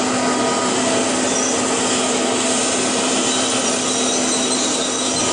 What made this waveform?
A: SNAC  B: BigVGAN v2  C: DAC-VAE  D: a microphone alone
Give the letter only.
D